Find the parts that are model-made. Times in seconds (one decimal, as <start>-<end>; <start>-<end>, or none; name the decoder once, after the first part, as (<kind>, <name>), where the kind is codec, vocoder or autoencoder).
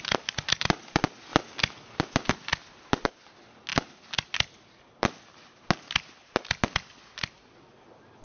none